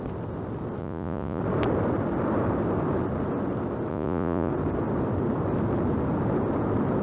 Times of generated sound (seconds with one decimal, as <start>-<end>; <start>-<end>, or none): 0.8-1.4; 3.9-4.5